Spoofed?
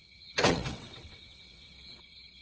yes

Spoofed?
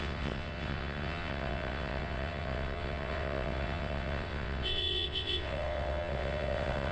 yes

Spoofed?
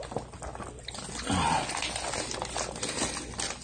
no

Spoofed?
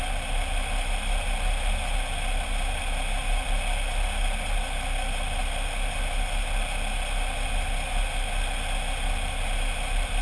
no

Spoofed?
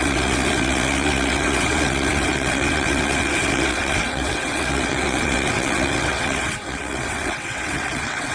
yes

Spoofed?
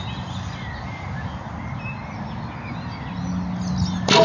no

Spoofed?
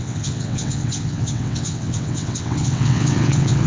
yes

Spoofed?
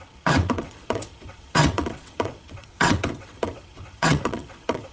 yes